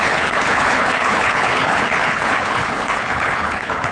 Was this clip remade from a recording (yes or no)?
yes